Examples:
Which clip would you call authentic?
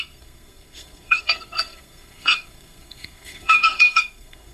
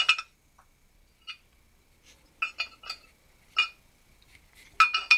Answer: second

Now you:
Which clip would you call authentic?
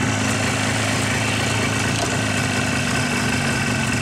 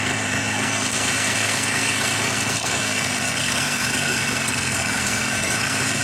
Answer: first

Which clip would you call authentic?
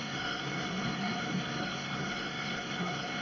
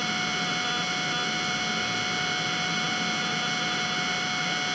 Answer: second